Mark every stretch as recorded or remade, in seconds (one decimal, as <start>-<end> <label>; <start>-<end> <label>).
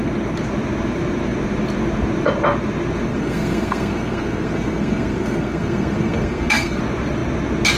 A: 0.0-3.1 recorded; 3.1-6.8 remade; 6.8-7.8 recorded